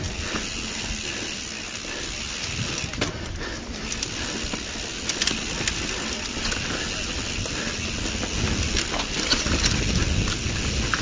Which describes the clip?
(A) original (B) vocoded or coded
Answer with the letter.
A